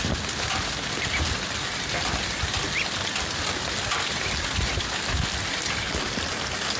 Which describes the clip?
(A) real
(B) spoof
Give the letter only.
A